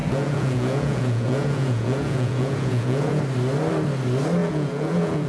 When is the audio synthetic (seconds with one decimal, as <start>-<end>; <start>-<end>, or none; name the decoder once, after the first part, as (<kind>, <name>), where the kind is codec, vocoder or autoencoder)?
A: 0.0-3.2 (vocoder, Vocos); 4.4-5.3